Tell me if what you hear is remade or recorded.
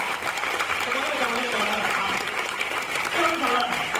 recorded